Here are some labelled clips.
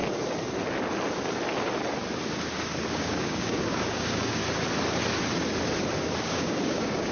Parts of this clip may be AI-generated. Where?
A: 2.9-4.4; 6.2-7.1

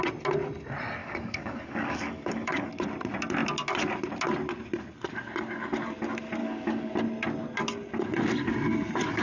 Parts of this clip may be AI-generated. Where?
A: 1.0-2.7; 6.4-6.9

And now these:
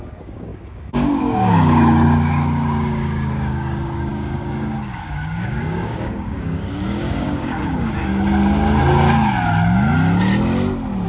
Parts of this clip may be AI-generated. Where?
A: 0.0-8.1